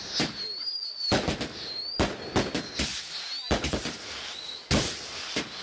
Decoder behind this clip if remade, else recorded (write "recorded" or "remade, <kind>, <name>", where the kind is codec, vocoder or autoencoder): recorded